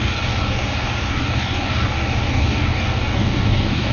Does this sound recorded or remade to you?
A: remade